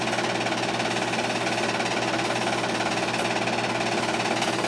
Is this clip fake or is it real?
real